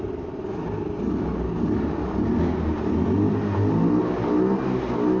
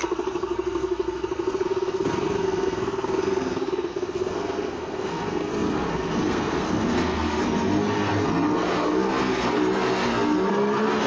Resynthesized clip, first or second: second